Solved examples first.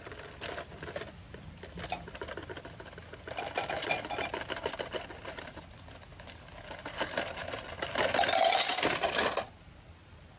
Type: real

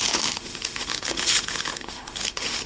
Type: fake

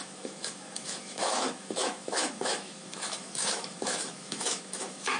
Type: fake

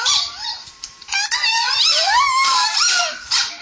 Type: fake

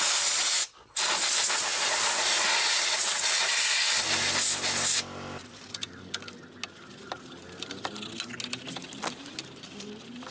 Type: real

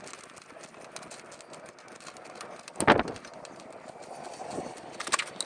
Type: real